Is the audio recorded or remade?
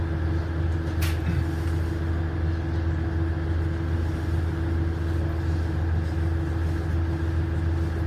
recorded